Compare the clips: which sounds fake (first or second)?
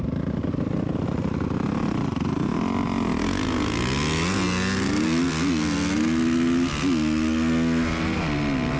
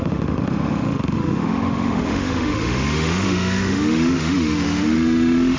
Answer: second